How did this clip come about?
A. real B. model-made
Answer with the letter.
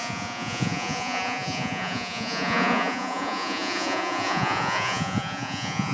B